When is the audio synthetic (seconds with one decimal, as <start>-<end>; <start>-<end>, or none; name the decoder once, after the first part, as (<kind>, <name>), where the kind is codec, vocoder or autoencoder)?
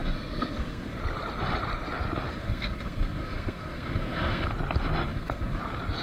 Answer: 0.0-1.0 (codec, SNAC); 2.3-4.5; 5.1-5.6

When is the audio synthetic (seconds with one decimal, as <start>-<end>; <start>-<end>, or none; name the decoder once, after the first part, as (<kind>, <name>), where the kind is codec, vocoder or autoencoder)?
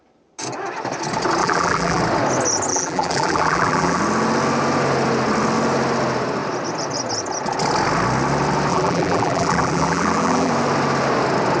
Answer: 1.4-2.0 (vocoder, BigVGAN v2); 2.7-4.0; 8.7-10.5